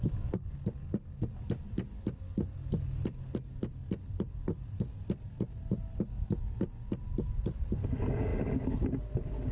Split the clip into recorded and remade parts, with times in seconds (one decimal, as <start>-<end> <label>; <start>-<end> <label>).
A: 0.0-9.5 recorded